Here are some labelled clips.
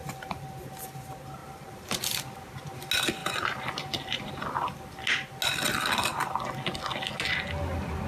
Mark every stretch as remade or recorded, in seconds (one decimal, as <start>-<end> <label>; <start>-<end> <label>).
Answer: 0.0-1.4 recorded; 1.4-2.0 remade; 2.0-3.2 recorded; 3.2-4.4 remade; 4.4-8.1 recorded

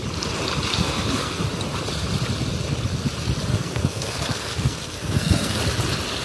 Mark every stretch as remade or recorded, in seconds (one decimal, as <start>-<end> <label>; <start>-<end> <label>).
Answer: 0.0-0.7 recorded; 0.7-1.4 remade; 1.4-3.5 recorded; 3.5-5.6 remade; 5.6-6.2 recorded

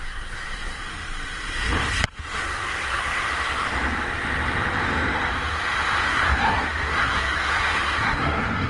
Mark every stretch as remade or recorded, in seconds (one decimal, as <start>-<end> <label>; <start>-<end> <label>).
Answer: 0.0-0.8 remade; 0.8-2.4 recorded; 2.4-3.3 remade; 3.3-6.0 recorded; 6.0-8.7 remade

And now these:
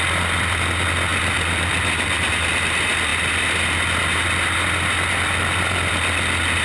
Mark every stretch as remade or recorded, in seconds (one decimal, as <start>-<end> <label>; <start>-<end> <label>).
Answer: 0.0-6.6 recorded

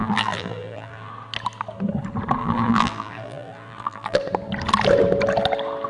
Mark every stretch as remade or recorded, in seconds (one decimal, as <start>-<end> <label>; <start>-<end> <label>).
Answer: 0.0-1.1 remade; 1.1-2.4 recorded; 2.4-4.2 remade; 4.2-5.9 recorded